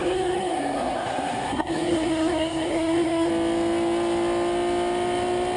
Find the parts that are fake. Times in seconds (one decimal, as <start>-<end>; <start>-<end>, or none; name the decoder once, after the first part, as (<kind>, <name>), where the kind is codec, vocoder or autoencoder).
0.0-3.3 (codec, SNAC)